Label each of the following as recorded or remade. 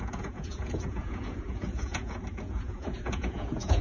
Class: remade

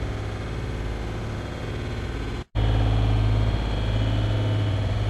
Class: recorded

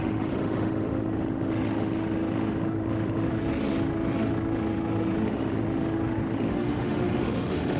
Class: remade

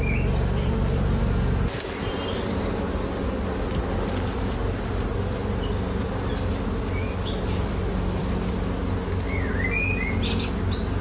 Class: recorded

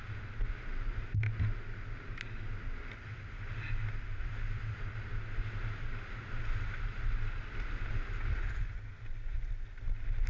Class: recorded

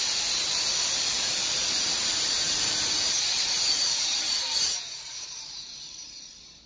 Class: remade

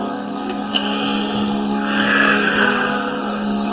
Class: remade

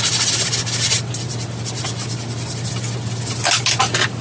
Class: recorded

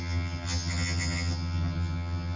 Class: remade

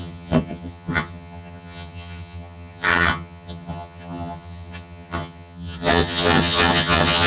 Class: remade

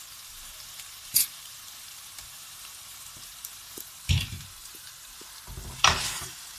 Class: remade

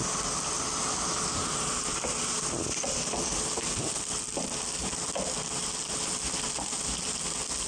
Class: recorded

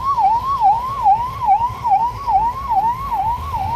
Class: remade